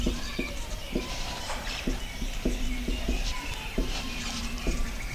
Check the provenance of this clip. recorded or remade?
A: remade